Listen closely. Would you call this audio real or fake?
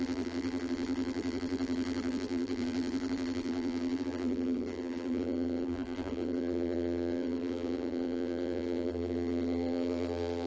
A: fake